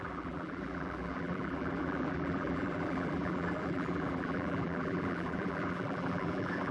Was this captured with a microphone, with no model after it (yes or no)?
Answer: no